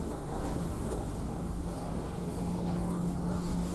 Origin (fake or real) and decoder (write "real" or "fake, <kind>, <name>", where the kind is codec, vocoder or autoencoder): fake, codec, DAC